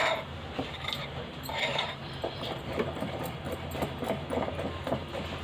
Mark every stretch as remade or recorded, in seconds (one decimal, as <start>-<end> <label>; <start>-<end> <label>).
0.0-3.2 remade; 3.2-5.4 recorded